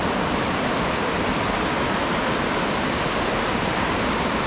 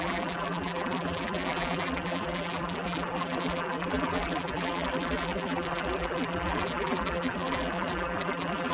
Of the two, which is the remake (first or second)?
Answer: second